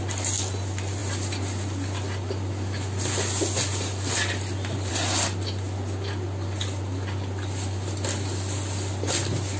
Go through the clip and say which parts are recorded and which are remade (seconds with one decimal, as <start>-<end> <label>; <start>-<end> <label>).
0.0-9.6 recorded